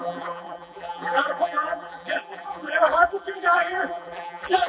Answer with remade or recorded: remade